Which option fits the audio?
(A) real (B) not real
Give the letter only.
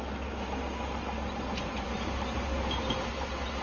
A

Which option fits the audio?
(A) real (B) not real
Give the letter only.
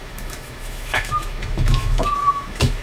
B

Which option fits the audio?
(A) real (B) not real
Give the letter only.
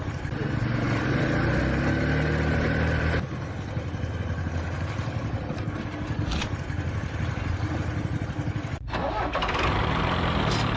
A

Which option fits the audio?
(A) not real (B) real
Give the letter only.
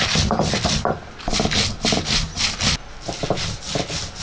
B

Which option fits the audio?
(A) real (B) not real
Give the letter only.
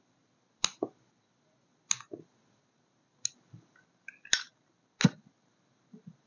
A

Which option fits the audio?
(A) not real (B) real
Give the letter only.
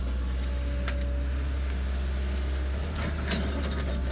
B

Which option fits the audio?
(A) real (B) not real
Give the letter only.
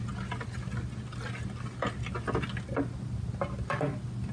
A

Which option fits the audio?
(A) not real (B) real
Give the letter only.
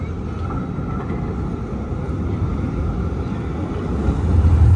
B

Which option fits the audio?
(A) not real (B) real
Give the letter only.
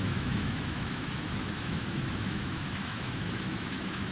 A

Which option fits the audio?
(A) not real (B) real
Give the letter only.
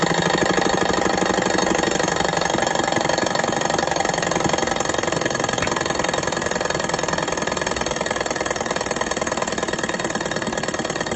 B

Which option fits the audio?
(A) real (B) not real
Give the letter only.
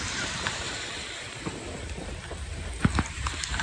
A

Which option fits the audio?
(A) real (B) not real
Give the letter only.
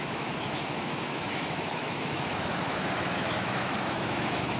B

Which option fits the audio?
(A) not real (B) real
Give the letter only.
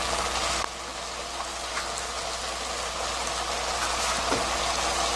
B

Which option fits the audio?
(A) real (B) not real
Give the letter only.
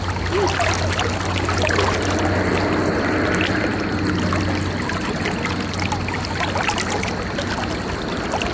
A